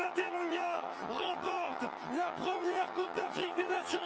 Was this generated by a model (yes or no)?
yes